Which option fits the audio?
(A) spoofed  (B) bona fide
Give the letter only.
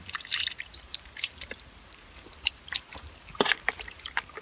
A